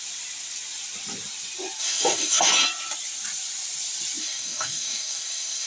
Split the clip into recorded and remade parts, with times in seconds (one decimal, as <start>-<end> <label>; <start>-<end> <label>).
0.0-1.8 recorded; 1.8-2.4 remade; 2.4-4.2 recorded; 4.2-5.7 remade